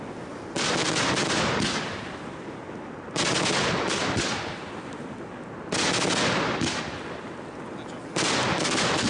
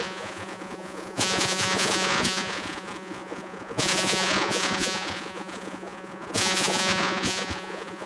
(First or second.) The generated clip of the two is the second